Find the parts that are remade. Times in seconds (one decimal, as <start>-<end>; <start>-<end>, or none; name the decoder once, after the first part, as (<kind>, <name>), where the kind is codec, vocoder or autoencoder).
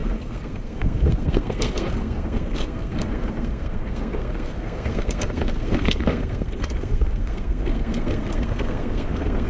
0.0-9.5 (codec, SNAC)